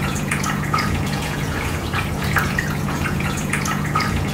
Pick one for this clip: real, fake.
fake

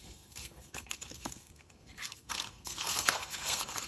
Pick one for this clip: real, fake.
fake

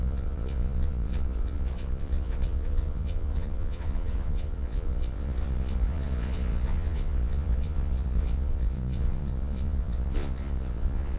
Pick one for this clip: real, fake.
fake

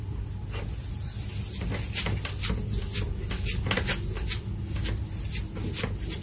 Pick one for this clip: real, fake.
real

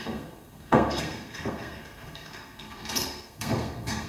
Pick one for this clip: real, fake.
fake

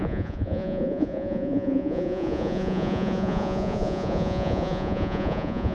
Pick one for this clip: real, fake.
fake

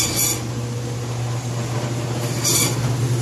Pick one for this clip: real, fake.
real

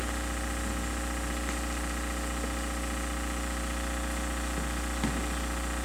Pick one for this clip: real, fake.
real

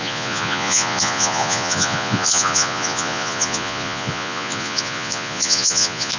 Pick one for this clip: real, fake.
fake